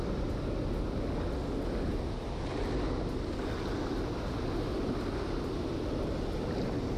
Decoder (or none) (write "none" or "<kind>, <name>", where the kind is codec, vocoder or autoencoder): none